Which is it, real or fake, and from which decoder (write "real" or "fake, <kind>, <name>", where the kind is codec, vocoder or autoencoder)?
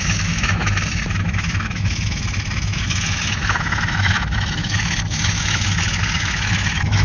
fake, autoencoder, DAC-VAE